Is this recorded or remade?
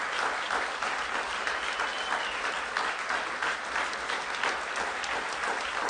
recorded